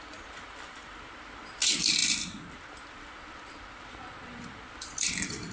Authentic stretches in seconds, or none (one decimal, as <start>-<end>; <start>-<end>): 0.0-5.5